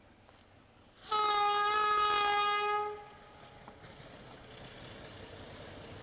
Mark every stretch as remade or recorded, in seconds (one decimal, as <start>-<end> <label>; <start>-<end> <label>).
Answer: 0.0-6.0 recorded